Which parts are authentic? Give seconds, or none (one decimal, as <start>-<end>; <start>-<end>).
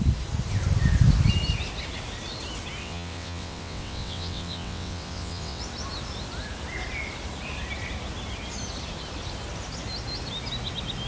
0.0-2.8; 5.6-11.1